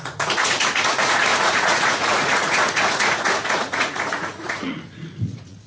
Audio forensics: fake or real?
fake